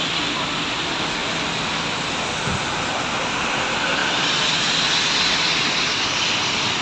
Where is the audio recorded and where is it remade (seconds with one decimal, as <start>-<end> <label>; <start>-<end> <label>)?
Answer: 0.0-6.8 recorded